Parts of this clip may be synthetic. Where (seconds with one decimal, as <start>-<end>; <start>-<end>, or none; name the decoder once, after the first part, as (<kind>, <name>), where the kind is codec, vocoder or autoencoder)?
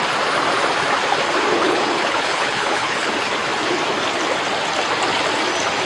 1.5-3.1 (codec, HILCodec)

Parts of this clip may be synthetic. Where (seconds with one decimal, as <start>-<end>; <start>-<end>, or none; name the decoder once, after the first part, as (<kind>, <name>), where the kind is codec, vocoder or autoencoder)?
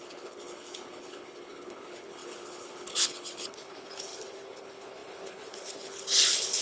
0.0-6.6 (codec, HILCodec)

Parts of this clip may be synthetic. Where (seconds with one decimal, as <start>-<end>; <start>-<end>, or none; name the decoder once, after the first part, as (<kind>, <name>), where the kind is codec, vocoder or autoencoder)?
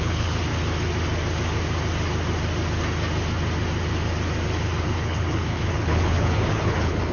0.0-0.5 (codec, HILCodec); 4.8-7.1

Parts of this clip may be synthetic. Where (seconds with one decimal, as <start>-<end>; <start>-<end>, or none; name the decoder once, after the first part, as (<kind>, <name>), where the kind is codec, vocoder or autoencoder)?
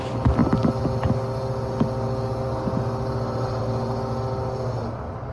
none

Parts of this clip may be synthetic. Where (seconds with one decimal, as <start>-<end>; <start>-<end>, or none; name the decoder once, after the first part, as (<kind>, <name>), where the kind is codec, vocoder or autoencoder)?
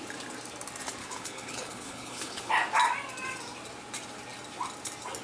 1.0-2.5 (codec, HILCodec)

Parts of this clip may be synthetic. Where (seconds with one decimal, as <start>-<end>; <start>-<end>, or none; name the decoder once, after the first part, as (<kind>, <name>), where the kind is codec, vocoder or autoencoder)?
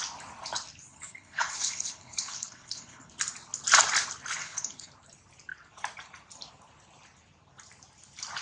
0.9-3.1 (codec, HILCodec); 4.4-4.9